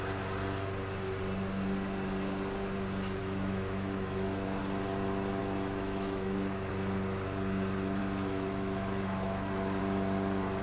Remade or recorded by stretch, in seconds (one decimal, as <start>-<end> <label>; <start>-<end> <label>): 0.0-3.2 recorded; 3.2-4.6 remade; 4.6-5.4 recorded; 5.4-6.7 remade; 6.7-8.0 recorded; 8.0-9.8 remade; 9.8-10.6 recorded